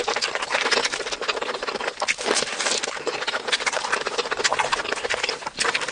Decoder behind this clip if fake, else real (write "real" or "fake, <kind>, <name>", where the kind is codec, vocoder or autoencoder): real